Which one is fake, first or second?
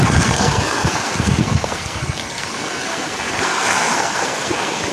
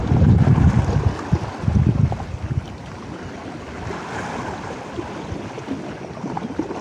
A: first